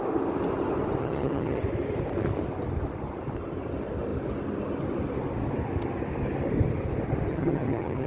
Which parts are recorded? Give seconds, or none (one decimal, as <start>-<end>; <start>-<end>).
0.0-1.0; 1.6-7.3